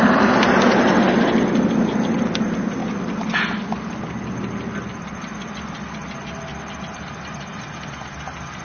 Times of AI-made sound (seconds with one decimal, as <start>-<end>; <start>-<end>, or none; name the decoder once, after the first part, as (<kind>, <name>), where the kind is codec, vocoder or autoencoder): none